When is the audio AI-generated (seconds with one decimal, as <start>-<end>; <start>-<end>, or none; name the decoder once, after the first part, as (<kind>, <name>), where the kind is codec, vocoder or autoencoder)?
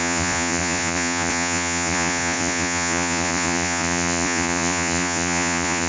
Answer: 0.0-5.9 (vocoder, Vocos)